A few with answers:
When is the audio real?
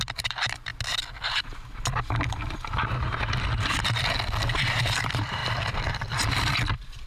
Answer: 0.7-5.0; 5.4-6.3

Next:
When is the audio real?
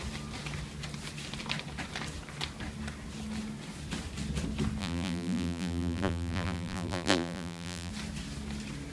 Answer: 0.0-4.8; 7.9-8.9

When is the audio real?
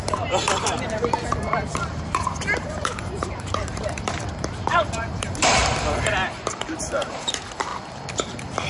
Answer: 5.6-6.4; 7.7-8.7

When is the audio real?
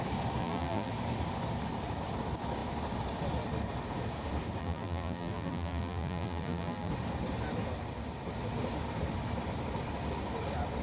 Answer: 0.0-0.4; 0.9-4.6; 6.9-10.8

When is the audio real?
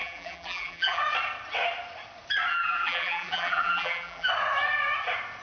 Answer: 1.0-2.5; 4.3-5.4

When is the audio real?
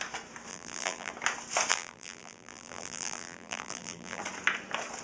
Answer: 0.0-0.5; 1.1-1.7; 4.2-5.0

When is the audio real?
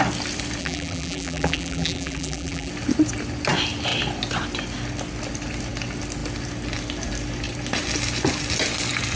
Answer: 0.0-0.6; 2.7-9.2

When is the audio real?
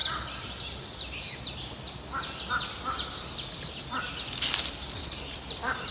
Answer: 0.0-5.9